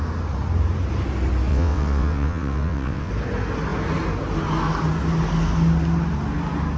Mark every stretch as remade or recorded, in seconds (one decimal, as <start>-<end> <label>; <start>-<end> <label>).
0.0-1.5 recorded; 1.5-3.1 remade; 3.1-6.8 recorded